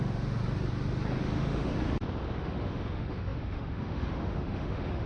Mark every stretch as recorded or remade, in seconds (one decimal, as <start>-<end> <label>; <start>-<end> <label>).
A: 0.0-0.4 remade; 0.4-1.2 recorded; 1.2-1.7 remade; 1.7-2.4 recorded; 2.4-5.1 remade